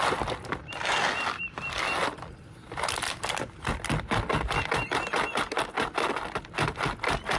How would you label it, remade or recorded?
recorded